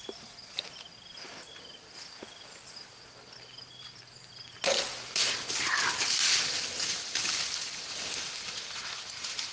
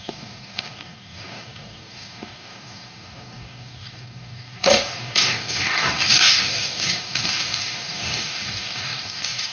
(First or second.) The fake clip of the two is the second